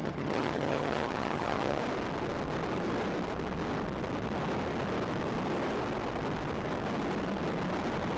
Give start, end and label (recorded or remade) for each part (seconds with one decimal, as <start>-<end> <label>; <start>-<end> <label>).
0.0-1.8 remade; 1.8-8.2 recorded